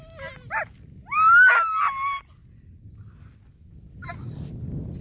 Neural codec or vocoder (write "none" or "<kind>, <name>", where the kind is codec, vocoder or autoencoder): none